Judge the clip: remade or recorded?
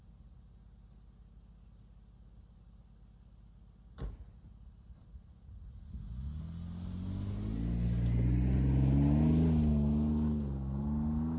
recorded